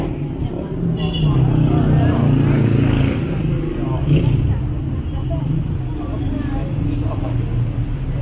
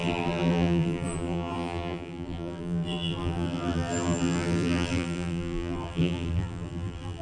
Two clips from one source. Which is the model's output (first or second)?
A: second